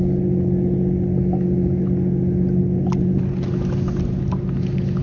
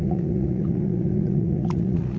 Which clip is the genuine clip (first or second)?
first